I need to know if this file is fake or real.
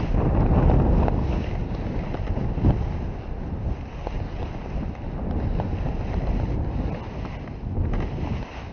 real